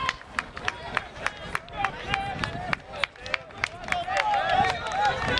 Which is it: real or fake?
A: real